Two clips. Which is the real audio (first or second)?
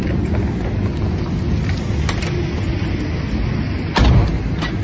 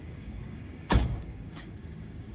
first